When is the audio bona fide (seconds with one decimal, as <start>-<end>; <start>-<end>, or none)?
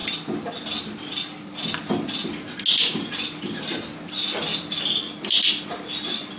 0.0-6.4